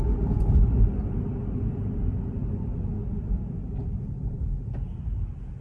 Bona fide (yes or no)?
yes